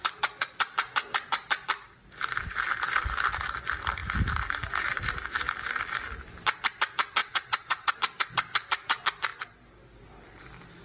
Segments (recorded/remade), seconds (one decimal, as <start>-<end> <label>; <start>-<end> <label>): 0.0-7.2 recorded; 7.2-7.9 remade; 7.9-10.8 recorded